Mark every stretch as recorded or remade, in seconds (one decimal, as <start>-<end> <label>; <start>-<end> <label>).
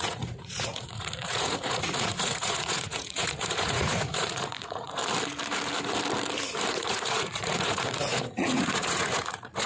0.0-5.0 remade; 5.0-6.7 recorded; 6.7-9.7 remade